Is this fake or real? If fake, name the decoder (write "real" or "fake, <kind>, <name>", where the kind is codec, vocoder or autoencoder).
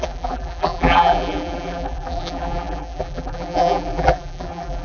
fake, vocoder, BigVGAN v2